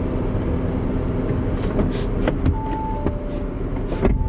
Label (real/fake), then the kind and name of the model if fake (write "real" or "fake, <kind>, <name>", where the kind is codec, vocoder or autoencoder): real